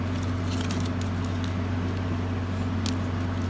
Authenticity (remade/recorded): recorded